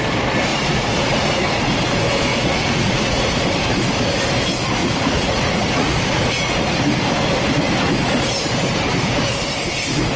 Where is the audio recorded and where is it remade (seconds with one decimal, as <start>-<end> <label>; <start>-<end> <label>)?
0.0-0.5 recorded; 0.5-1.4 remade; 1.4-2.3 recorded; 2.3-3.3 remade; 3.3-4.8 recorded; 4.8-6.8 remade; 6.8-10.2 recorded